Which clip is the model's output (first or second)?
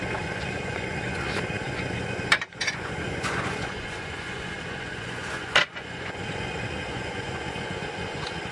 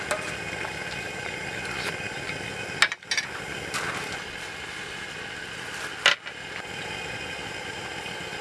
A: first